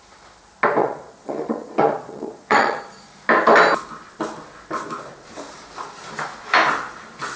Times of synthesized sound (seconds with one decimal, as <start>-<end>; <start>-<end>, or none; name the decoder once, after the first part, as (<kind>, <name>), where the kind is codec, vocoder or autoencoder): 0.8-2.8 (vocoder, Vocos)